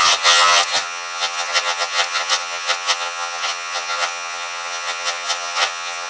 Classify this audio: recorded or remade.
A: remade